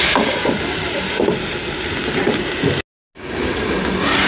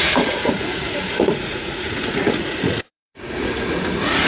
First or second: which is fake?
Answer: second